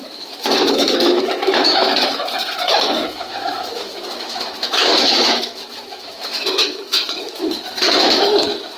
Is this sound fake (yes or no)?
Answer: yes